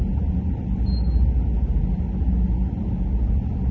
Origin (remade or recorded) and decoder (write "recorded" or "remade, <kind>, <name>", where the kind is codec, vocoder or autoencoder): recorded